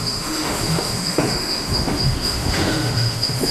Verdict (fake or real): fake